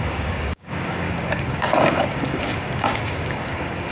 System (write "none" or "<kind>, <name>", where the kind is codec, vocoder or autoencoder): codec, DAC